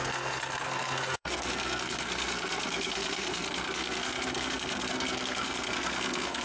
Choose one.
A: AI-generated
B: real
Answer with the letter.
A